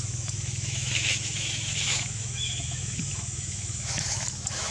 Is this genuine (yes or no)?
no